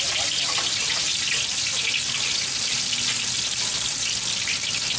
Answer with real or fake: real